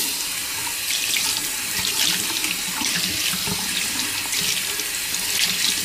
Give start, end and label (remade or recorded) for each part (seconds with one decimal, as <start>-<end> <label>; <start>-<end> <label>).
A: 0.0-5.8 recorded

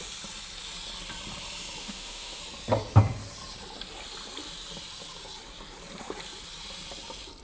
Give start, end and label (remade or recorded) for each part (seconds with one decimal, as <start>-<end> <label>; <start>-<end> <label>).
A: 0.0-1.8 recorded; 1.8-2.4 remade; 2.4-7.4 recorded

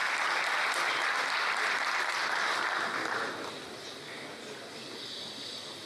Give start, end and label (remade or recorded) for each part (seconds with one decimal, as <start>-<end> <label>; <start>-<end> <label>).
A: 0.0-5.9 recorded

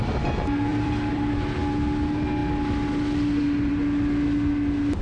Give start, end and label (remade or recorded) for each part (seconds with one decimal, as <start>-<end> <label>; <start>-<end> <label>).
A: 0.0-0.7 recorded; 0.7-1.3 remade; 1.3-5.0 recorded

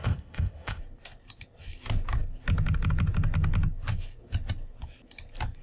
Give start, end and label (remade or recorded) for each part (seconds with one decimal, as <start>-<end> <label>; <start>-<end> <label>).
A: 0.0-0.8 remade; 0.8-5.6 recorded

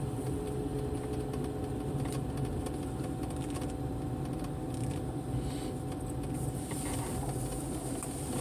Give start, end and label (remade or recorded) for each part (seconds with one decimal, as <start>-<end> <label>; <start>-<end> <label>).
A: 0.0-8.4 recorded

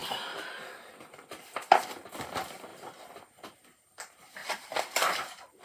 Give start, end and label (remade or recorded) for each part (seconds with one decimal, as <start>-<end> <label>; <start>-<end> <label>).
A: 0.0-4.4 recorded; 4.4-5.6 remade

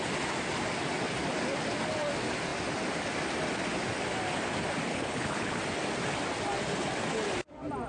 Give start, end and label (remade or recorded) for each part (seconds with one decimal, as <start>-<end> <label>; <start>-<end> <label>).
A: 0.0-4.9 recorded; 4.9-5.6 remade; 5.6-7.9 recorded